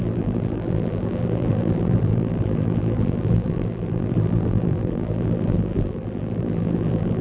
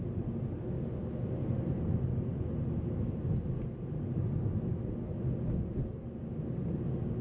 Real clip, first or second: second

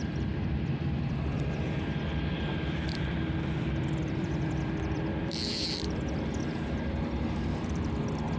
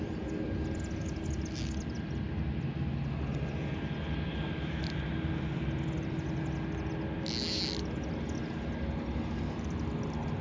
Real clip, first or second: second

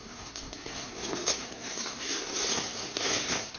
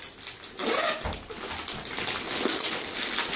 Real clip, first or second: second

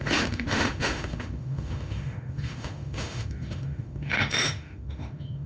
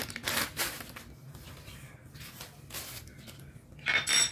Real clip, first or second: second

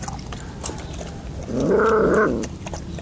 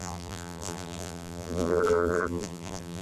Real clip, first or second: first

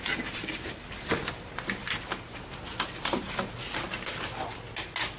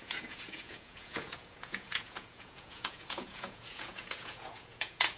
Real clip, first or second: first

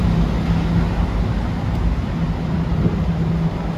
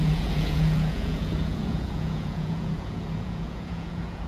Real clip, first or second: first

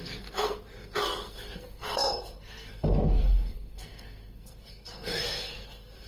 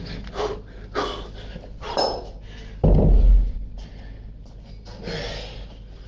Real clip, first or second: second